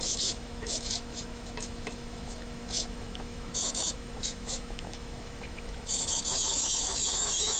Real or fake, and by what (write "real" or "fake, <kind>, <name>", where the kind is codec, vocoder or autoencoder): fake, autoencoder, DAC-VAE